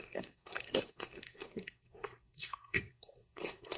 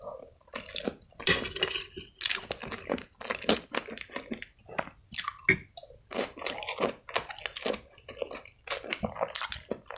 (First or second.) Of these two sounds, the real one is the second